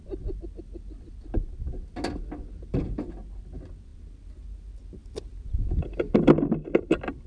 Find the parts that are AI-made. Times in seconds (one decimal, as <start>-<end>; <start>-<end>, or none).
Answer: none